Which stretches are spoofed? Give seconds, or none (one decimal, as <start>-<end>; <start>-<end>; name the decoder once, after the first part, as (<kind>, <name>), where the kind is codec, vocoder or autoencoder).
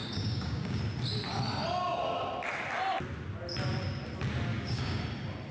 0.0-0.8 (codec, DAC); 4.5-5.0